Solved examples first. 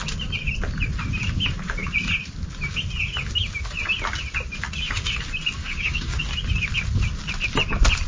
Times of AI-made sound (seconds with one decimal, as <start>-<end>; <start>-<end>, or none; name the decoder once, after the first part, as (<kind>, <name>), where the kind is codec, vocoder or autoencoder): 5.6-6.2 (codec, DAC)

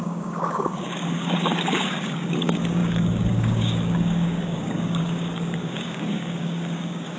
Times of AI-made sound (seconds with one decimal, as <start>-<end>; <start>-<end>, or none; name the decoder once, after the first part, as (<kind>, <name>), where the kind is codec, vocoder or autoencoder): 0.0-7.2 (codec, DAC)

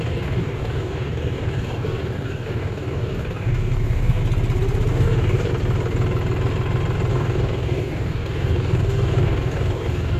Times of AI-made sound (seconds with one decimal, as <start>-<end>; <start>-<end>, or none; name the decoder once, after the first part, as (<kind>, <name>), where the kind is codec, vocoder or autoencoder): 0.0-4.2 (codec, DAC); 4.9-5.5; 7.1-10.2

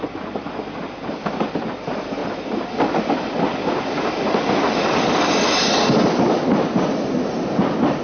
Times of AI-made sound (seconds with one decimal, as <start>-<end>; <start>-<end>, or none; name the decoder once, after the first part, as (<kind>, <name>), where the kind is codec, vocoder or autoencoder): none